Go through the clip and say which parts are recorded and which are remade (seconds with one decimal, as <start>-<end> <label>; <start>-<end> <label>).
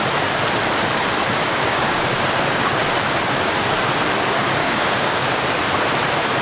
0.0-1.5 recorded; 1.5-2.1 remade; 2.1-4.6 recorded; 4.6-5.4 remade; 5.4-6.4 recorded